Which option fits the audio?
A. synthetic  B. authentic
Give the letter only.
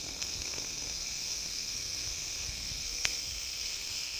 A